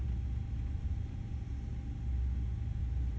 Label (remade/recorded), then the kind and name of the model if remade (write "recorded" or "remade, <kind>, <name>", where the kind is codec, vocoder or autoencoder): recorded